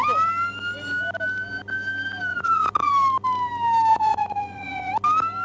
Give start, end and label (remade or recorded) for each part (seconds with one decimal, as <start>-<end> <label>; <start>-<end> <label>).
0.0-2.3 recorded; 2.3-2.9 remade; 2.9-3.9 recorded; 3.9-4.9 remade; 4.9-5.4 recorded